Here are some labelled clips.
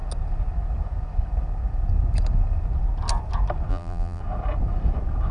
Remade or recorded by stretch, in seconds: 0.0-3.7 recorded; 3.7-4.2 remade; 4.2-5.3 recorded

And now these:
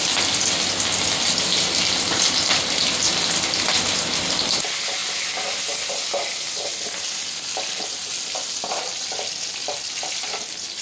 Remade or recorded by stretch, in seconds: 0.0-10.8 recorded